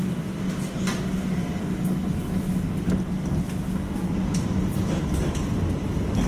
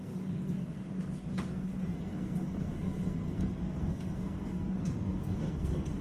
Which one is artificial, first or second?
second